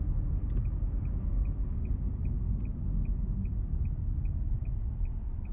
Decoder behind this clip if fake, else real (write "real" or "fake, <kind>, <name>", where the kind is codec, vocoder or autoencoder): real